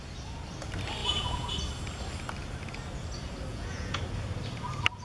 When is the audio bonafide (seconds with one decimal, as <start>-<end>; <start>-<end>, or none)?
0.0-1.0; 1.5-3.5; 4.0-5.0